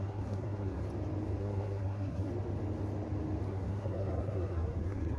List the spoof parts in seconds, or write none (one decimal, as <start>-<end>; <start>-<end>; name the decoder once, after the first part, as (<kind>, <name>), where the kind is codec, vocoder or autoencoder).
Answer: 0.0-0.8 (codec, SNAC); 1.4-2.3; 3.5-5.2